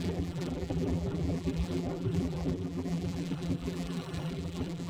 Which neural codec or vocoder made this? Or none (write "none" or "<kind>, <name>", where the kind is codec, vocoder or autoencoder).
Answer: vocoder, BigVGAN v2